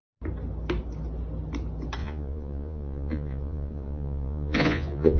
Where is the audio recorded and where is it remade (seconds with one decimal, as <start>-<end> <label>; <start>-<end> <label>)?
0.0-2.0 recorded; 2.0-5.2 remade

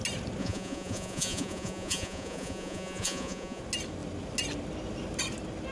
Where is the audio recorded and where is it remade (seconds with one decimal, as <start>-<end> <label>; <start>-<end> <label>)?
0.0-0.4 recorded; 0.4-3.6 remade; 3.6-5.7 recorded

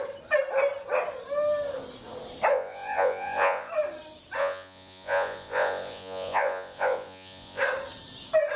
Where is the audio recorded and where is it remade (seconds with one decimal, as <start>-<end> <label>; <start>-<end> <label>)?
0.0-2.5 recorded; 2.5-3.7 remade; 3.7-4.4 recorded; 4.4-7.6 remade; 7.6-8.6 recorded

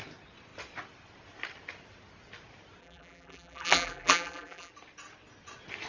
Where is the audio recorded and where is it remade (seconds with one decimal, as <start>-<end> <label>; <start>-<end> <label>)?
0.0-2.8 recorded; 2.8-4.7 remade; 4.7-5.9 recorded

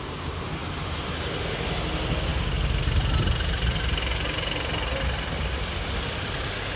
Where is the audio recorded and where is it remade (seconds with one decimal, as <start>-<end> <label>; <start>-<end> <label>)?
0.0-0.6 recorded; 0.6-1.8 remade; 1.8-6.8 recorded

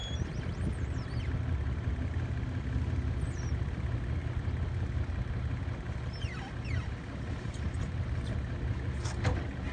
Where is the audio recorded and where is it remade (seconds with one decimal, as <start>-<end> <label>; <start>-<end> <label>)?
0.0-9.7 recorded